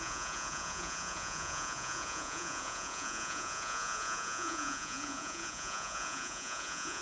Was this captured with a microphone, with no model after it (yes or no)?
no